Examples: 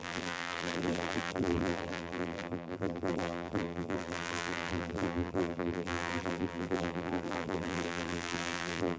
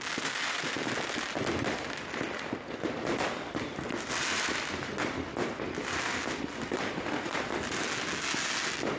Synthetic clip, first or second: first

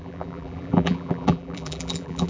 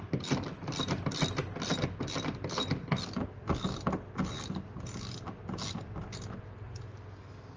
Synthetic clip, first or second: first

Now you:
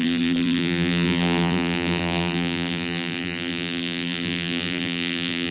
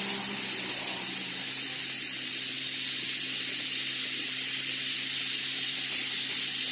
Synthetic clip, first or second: first